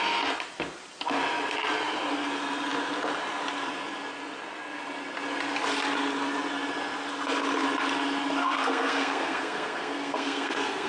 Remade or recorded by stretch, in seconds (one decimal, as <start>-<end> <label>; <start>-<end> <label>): 0.0-8.4 recorded; 8.4-10.9 remade